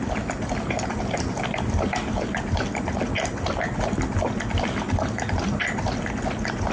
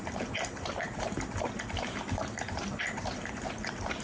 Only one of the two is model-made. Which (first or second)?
second